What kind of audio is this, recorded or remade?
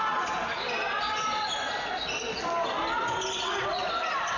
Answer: recorded